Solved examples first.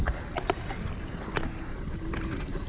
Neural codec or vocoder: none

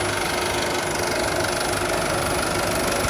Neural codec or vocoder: none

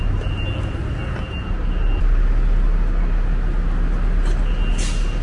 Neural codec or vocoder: none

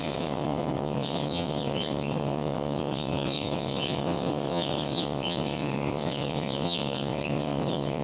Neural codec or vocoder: vocoder, WaveNeXt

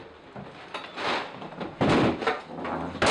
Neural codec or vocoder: none